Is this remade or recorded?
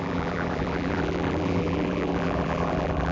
remade